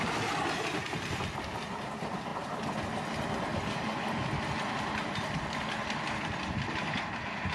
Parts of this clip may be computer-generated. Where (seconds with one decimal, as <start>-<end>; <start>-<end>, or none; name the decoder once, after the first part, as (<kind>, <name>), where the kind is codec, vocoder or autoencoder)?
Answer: 0.0-2.3 (vocoder, BigVGAN v2); 2.9-3.5; 6.2-7.5